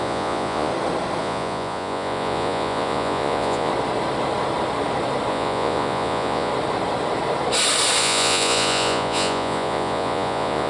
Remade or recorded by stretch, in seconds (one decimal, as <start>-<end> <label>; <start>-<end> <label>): 0.0-0.7 remade; 0.7-1.2 recorded; 1.2-3.7 remade; 3.7-5.3 recorded; 5.3-6.5 remade; 6.5-8.0 recorded; 8.0-10.7 remade